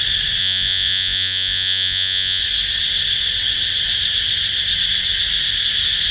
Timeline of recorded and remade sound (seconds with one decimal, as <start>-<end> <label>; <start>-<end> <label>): 0.0-0.4 recorded; 0.4-2.4 remade; 2.4-6.1 recorded